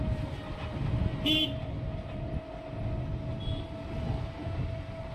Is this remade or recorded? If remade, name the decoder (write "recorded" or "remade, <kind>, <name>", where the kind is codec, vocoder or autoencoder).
recorded